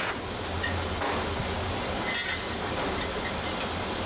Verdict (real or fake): real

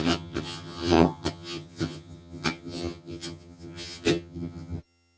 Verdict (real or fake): fake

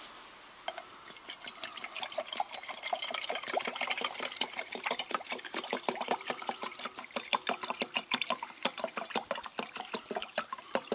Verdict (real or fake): real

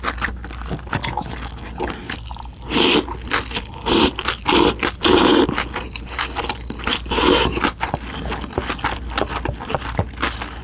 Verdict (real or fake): real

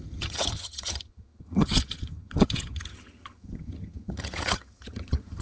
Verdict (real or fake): fake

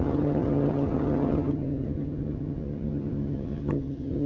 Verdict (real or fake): fake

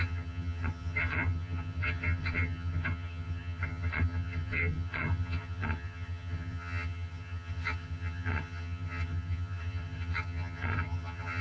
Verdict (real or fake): fake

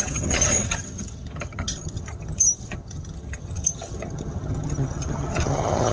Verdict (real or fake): fake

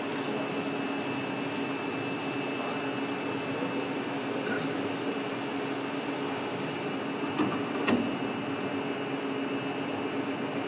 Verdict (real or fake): real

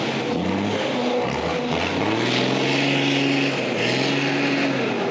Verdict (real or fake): real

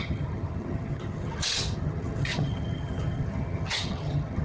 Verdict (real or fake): fake